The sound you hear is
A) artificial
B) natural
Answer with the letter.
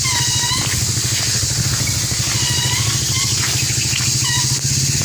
B